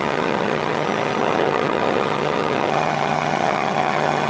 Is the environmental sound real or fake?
fake